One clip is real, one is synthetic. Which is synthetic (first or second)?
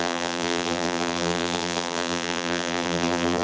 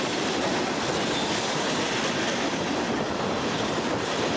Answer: first